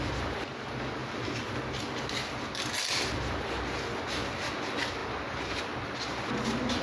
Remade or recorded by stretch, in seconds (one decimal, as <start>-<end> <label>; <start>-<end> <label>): 0.0-6.8 recorded